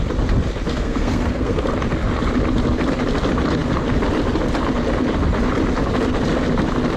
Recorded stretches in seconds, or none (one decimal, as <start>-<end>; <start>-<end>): 0.0-0.7; 1.6-7.0